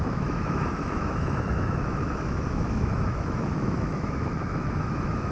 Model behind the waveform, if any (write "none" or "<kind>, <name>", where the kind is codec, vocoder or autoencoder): autoencoder, DAC-VAE